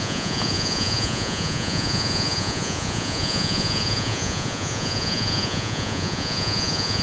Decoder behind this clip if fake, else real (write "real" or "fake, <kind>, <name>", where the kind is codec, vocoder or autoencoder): fake, vocoder, Vocos